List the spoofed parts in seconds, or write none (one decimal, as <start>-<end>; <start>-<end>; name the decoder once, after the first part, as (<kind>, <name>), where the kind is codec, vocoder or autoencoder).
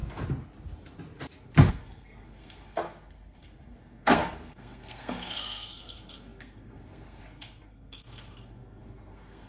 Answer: 1.7-9.5 (codec, SNAC)